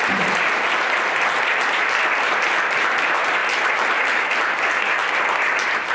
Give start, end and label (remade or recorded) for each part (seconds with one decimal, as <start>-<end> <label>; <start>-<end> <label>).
0.0-3.4 remade; 3.4-4.8 recorded; 4.8-5.9 remade